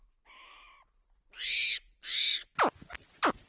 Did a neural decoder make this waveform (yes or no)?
no